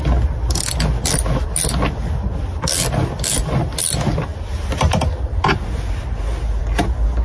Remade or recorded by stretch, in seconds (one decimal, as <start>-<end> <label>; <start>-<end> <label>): 0.0-7.2 recorded